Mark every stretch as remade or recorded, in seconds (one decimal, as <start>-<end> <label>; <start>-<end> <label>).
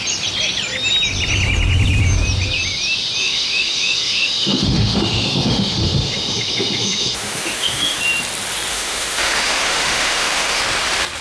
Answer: 0.0-3.2 recorded; 3.2-8.0 remade; 8.0-8.7 recorded; 8.7-10.6 remade; 10.6-11.2 recorded